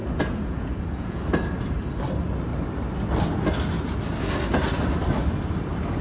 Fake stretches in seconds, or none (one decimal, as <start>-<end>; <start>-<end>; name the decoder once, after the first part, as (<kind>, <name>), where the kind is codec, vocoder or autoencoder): 0.0-1.2 (vocoder, Vocos)